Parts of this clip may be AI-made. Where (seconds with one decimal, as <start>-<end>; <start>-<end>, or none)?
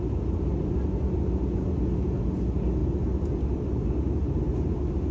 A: 2.8-4.5